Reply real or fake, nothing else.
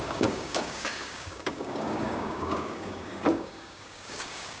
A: fake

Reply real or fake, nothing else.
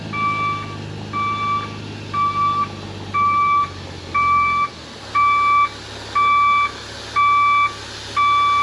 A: real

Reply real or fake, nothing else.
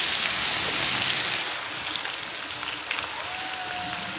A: real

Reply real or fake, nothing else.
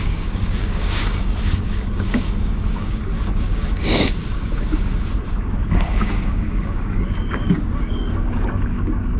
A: fake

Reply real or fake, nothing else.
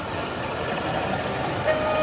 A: real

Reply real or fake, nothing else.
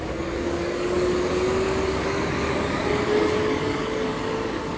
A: fake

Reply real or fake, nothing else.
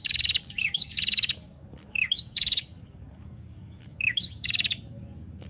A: fake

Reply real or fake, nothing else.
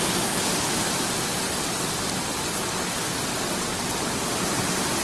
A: real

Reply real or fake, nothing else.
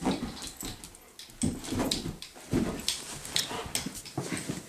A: real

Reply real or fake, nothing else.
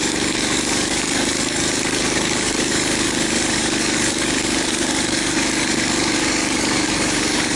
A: fake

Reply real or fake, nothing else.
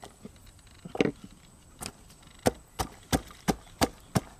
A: real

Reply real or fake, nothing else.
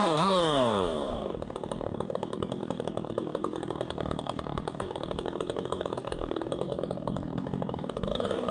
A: fake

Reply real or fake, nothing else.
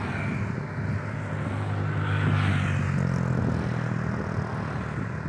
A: real